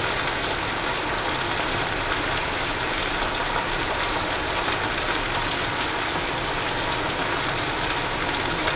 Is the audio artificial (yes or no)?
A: no